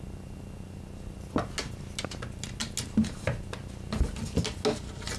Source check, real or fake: real